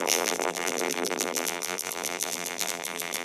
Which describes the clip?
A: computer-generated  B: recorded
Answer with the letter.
A